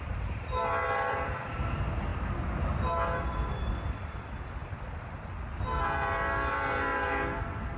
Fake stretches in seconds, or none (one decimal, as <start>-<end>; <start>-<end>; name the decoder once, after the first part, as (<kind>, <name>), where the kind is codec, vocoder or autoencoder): none